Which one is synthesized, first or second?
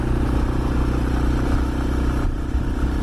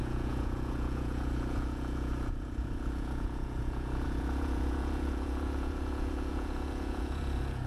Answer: second